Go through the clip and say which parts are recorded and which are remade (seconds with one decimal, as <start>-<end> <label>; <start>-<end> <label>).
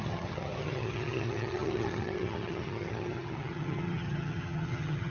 0.0-5.1 remade